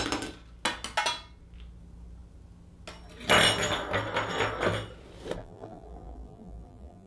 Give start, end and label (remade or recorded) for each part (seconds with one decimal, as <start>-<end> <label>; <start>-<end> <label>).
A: 0.0-5.4 recorded; 5.4-7.1 remade